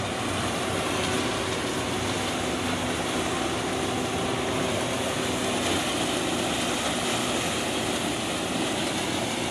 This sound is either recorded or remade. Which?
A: recorded